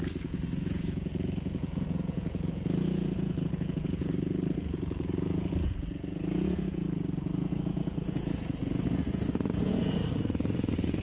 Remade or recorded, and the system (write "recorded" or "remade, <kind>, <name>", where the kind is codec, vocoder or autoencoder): remade, vocoder, Vocos